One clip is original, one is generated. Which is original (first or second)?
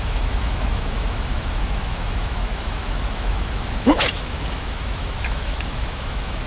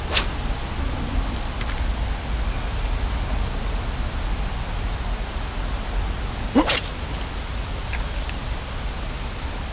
second